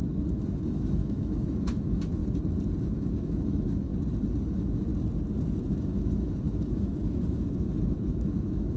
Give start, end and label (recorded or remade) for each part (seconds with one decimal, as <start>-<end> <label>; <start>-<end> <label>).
0.0-2.2 remade; 2.2-2.8 recorded; 2.8-3.9 remade; 3.9-4.5 recorded; 4.5-4.9 remade; 4.9-5.6 recorded; 5.6-8.8 remade